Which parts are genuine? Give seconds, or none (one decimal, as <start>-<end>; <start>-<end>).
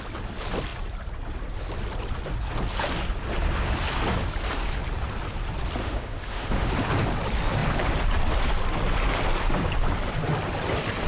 0.0-5.8; 6.7-11.1